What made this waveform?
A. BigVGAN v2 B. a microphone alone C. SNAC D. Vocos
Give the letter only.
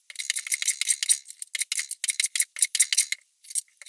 B